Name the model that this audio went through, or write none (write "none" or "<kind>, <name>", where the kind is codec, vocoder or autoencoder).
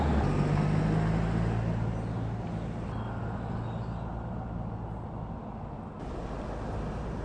none